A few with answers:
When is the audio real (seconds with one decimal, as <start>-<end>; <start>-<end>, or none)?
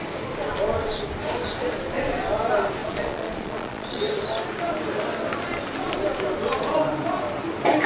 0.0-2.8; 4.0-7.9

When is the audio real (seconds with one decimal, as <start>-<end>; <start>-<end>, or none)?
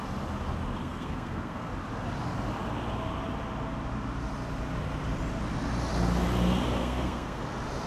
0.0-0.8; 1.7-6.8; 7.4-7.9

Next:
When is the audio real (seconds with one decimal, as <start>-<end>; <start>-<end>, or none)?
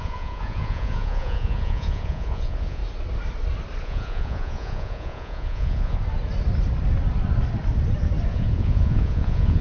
2.8-3.8; 6.0-8.3